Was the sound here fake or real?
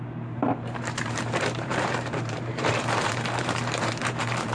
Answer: fake